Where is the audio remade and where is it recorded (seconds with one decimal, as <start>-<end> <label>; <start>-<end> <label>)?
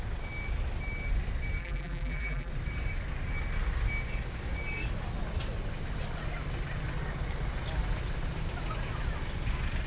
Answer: 0.0-1.6 recorded; 1.6-2.5 remade; 2.5-9.9 recorded